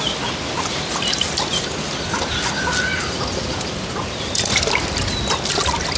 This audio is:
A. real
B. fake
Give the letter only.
A